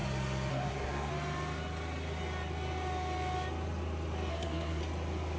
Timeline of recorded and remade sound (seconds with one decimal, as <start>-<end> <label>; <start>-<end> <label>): 0.0-0.5 recorded; 0.5-1.1 remade; 1.1-4.3 recorded; 4.3-4.8 remade; 4.8-5.4 recorded